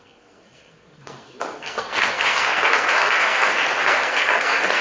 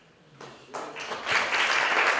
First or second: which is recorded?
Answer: second